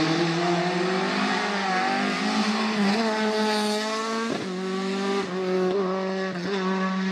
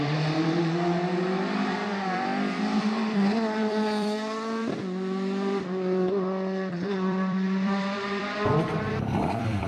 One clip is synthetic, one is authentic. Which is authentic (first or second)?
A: first